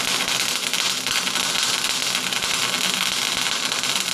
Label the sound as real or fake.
real